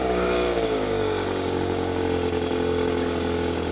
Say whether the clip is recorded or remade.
remade